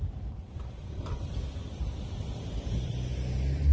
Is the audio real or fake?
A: fake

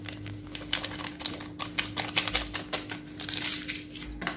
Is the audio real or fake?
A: real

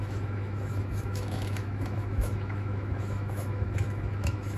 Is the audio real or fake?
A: fake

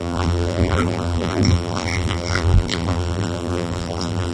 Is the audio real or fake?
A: fake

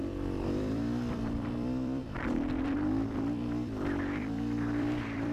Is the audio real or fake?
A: fake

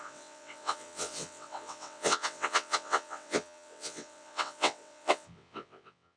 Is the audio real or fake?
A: fake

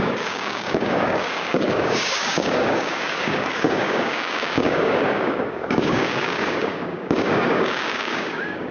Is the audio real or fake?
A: fake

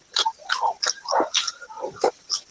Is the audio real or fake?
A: real